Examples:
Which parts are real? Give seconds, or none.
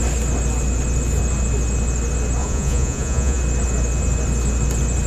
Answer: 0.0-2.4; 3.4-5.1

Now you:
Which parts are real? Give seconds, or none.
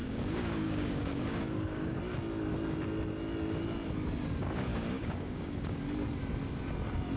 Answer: 2.0-4.7; 5.8-7.2